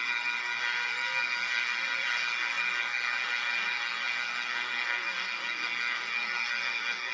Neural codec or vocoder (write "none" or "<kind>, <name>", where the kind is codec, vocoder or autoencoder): codec, SNAC